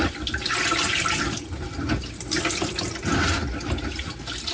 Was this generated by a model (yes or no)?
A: no